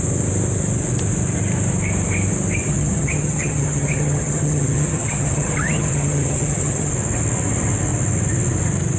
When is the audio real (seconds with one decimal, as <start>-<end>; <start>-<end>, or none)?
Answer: 0.0-2.6; 6.9-9.0